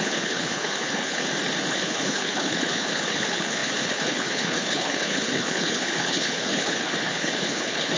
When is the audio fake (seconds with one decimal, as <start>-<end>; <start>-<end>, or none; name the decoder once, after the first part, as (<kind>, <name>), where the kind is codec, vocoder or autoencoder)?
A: 0.0-1.2 (codec, HILCodec); 1.7-8.0